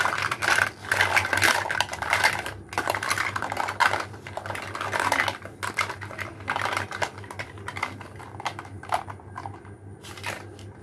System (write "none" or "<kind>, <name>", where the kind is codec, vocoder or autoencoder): none